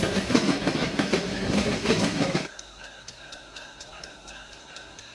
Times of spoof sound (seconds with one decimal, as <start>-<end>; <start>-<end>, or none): 0.0-5.1